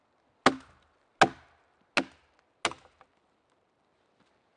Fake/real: real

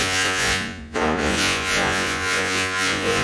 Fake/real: fake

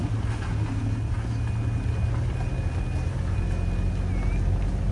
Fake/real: real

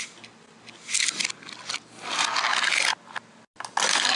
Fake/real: real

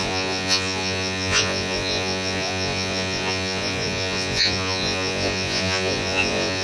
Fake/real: fake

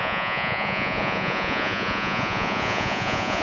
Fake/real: fake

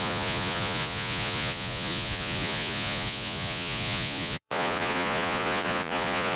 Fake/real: fake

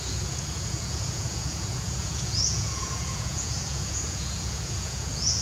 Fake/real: fake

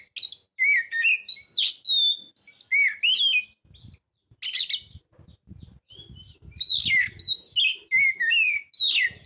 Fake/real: real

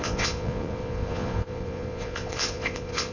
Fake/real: fake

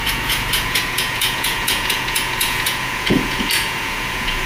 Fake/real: fake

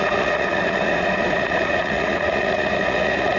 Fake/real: fake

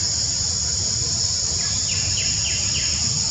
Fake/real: real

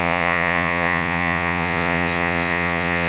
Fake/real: fake